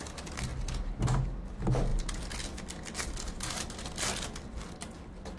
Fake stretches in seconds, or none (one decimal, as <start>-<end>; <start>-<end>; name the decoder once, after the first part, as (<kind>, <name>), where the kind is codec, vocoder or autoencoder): none